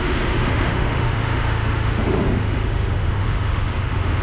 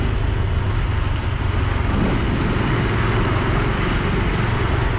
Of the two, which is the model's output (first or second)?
first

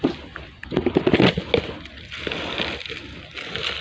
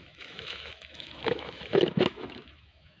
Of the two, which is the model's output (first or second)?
second